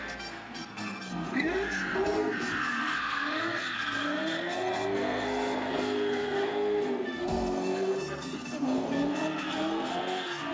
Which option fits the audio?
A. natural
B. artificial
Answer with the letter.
B